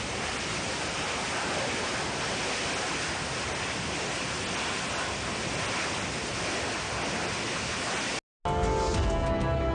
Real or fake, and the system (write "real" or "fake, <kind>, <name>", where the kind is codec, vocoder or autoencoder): real